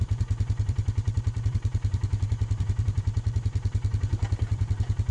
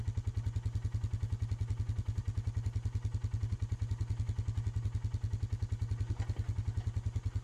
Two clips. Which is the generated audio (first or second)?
first